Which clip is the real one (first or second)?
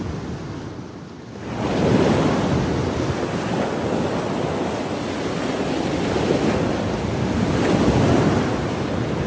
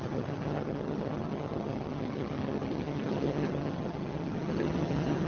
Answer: first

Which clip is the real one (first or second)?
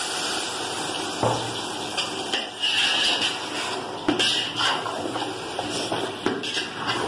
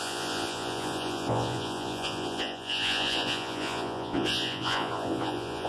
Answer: first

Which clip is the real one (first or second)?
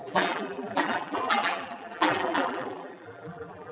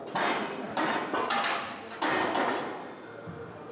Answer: second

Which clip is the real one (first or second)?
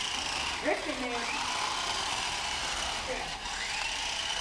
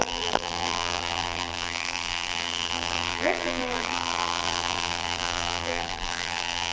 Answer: first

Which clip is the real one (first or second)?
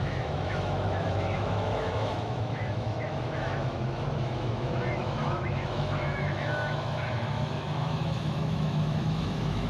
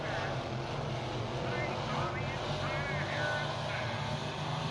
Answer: second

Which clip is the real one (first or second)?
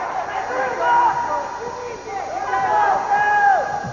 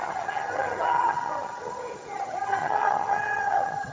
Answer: first